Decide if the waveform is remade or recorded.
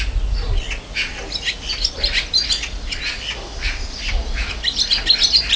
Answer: recorded